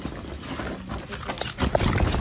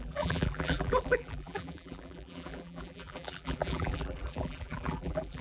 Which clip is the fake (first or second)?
second